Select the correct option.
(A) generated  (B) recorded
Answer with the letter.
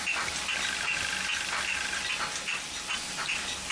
B